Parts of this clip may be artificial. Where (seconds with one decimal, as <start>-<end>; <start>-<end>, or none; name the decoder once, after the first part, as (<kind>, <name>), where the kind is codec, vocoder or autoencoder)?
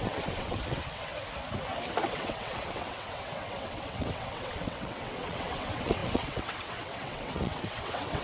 0.0-1.1 (vocoder, WaveNeXt); 2.0-8.2